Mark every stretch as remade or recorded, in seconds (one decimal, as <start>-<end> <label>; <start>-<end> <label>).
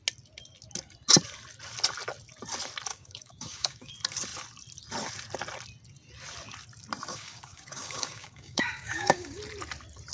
0.0-2.9 recorded; 2.9-3.9 remade; 3.9-7.1 recorded; 7.1-9.4 remade; 9.4-10.1 recorded